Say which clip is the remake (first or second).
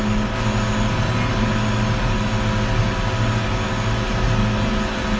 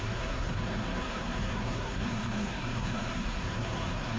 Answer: second